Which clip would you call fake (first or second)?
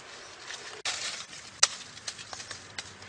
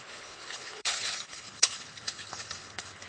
second